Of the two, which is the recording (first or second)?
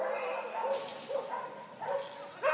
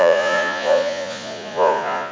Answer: first